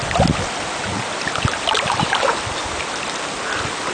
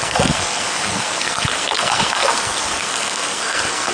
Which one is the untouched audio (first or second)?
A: first